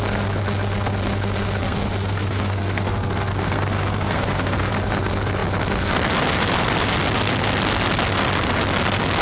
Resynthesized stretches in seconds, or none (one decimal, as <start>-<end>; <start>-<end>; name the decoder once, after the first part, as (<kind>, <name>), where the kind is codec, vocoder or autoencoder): 1.6-4.7 (codec, SNAC)